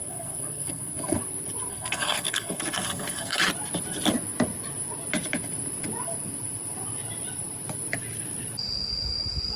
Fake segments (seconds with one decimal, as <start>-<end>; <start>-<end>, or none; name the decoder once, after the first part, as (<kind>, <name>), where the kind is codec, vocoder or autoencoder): 0.0-1.2 (codec, SNAC); 1.7-3.4